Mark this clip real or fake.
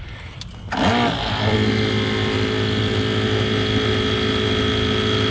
real